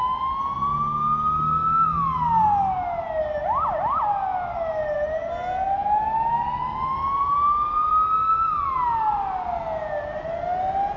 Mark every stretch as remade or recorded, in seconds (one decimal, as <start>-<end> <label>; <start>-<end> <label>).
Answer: 0.0-11.0 recorded